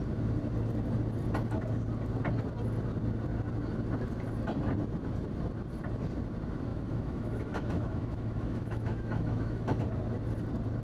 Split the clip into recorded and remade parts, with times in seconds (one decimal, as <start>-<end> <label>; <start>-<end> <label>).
0.0-6.7 recorded; 6.7-9.8 remade; 9.8-10.8 recorded